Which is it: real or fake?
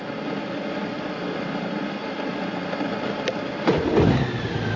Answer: real